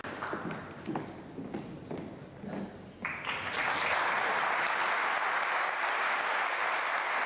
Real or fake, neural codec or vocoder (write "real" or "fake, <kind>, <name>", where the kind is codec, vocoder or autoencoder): real